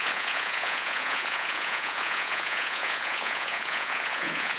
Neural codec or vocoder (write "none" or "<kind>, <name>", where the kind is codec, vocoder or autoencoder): vocoder, Vocos